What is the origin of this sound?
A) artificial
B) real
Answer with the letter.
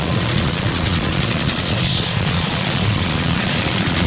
A